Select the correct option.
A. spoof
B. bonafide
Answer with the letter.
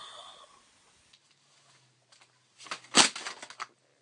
B